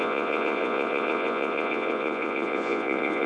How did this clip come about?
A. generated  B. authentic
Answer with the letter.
A